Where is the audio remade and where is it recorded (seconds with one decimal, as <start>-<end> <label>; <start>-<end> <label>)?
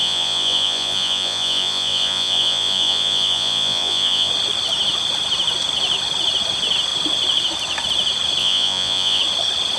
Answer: 0.0-4.3 remade; 4.3-8.4 recorded; 8.4-9.2 remade; 9.2-9.8 recorded